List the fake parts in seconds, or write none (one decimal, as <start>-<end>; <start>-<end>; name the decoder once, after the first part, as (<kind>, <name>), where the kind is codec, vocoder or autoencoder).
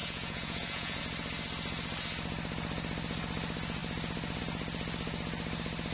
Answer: 0.0-1.0 (vocoder, Vocos)